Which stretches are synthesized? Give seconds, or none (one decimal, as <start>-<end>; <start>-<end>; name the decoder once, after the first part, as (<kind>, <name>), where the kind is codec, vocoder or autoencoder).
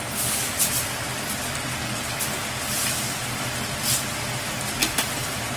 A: 0.5-1.4 (vocoder, BigVGAN v2)